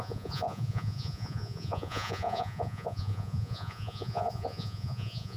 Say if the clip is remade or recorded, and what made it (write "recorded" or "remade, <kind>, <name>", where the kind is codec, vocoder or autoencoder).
remade, vocoder, Vocos